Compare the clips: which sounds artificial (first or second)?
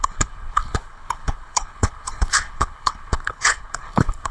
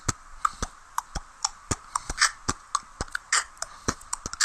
first